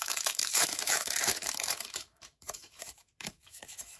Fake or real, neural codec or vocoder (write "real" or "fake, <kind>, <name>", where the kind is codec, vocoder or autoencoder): fake, autoencoder, DAC-VAE